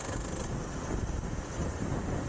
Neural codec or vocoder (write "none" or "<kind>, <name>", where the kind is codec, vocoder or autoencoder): none